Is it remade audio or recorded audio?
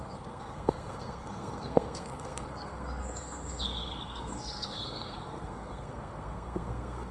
remade